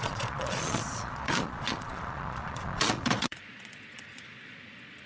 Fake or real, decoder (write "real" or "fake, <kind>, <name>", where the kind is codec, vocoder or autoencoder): fake, vocoder, Vocos